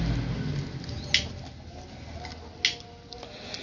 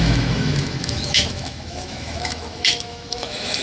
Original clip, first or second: first